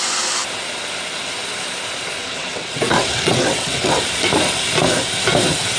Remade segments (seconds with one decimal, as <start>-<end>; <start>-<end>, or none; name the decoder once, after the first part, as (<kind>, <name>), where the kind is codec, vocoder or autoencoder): 2.2-4.0 (vocoder, WaveNeXt)